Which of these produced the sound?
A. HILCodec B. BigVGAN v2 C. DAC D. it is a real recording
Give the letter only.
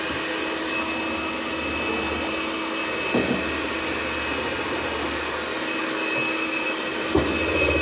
D